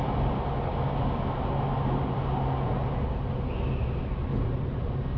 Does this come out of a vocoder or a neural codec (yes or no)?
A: no